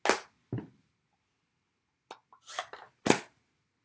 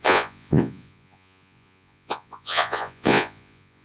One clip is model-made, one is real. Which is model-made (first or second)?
second